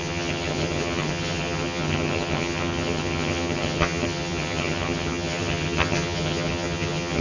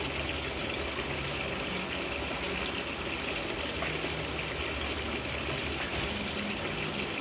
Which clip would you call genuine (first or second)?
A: second